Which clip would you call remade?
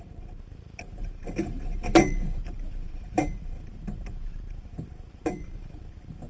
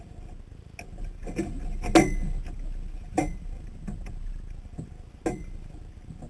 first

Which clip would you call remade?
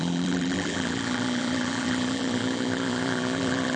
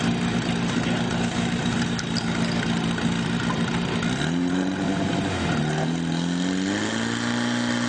first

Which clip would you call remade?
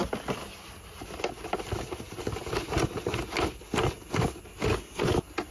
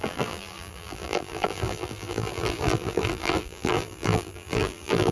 second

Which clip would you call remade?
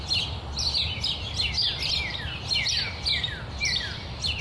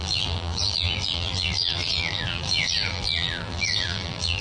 second